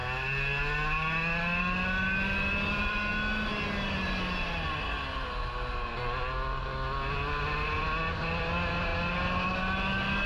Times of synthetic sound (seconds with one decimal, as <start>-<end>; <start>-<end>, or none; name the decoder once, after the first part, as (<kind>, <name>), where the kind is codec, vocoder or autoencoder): none